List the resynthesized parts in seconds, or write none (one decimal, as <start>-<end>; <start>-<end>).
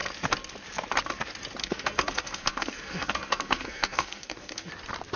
1.6-4.7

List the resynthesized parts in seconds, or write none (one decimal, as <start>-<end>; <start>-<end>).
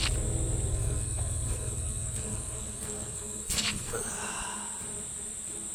0.7-4.1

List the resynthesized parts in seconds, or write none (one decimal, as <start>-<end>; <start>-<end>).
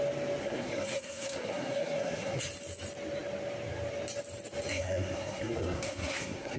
0.4-2.4; 4.7-6.6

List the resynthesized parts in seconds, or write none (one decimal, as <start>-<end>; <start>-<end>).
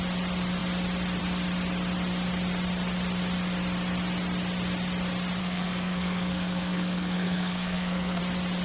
5.4-8.2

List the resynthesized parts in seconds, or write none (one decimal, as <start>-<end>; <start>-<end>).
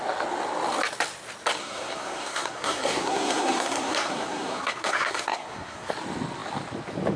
1.6-5.9